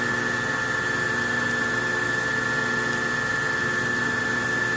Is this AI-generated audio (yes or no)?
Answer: no